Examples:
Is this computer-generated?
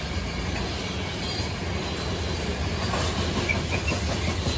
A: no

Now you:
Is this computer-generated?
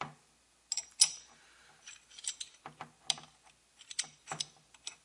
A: no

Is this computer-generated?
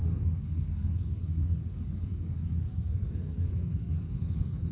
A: yes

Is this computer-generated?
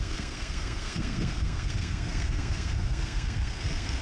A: yes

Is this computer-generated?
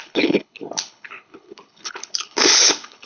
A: yes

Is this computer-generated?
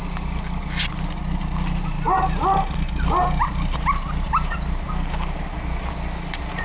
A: no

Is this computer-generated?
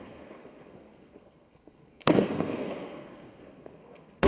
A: yes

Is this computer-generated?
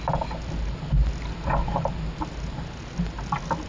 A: no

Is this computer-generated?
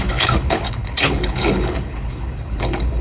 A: yes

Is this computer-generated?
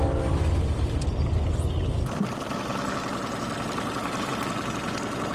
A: no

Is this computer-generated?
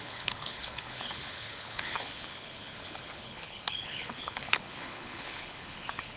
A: yes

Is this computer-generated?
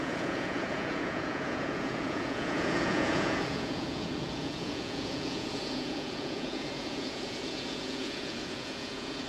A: yes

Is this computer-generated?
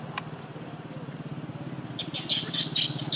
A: no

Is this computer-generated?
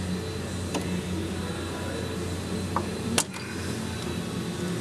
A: no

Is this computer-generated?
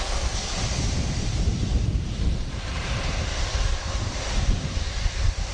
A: yes